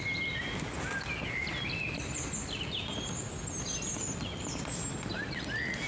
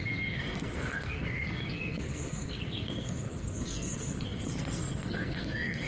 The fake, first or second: second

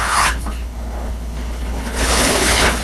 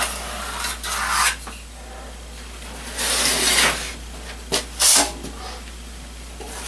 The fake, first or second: first